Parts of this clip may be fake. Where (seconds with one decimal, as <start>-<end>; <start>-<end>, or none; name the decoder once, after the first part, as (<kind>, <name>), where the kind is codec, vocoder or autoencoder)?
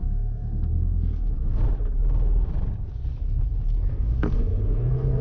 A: 0.0-1.6 (codec, SNAC); 3.9-5.2